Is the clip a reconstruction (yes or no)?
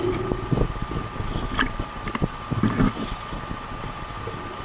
no